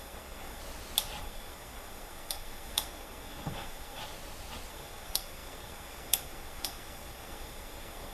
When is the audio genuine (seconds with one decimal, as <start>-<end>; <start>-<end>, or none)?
0.6-1.2; 4.0-4.7